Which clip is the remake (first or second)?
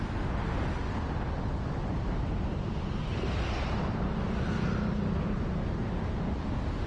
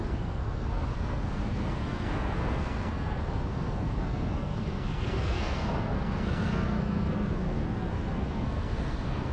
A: second